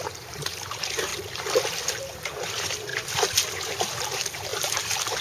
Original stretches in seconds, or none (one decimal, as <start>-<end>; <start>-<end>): 1.1-2.0; 2.9-3.5

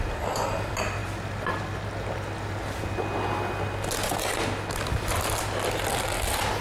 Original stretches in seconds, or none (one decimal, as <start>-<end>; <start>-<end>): 0.0-6.6

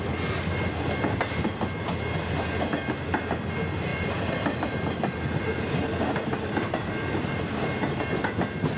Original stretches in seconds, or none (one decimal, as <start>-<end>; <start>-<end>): 0.0-3.9; 7.4-8.8

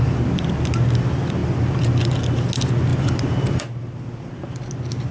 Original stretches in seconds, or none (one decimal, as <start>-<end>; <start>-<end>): 0.0-1.4; 2.1-2.9; 3.6-5.1

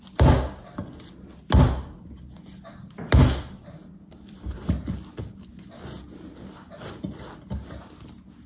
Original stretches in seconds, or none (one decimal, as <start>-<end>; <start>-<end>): 0.0-3.8; 5.1-8.5

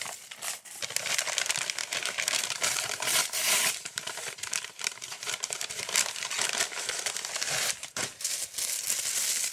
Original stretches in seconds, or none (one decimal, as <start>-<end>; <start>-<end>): 0.0-1.8; 5.8-9.5

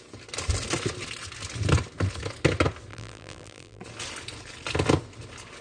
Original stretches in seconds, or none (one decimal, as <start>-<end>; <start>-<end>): 0.0-2.9; 3.8-5.6

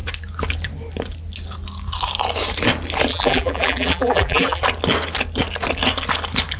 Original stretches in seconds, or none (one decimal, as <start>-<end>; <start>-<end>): 0.0-3.1; 4.6-6.6